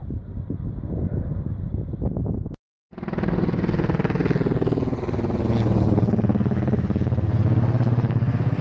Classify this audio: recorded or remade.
recorded